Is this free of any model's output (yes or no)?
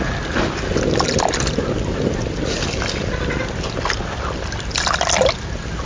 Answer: yes